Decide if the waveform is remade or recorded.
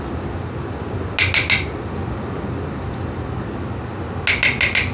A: recorded